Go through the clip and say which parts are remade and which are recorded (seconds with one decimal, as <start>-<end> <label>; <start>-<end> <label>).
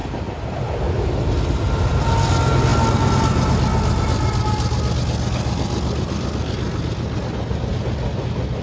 0.0-8.6 recorded